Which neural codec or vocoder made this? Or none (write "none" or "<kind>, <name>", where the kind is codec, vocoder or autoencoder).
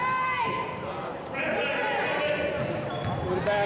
none